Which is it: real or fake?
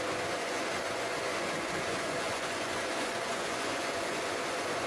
fake